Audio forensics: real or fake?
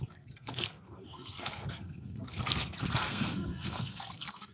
fake